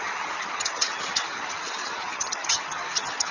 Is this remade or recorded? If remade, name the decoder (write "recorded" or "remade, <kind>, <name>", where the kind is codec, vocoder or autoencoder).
remade, vocoder, HiFi-GAN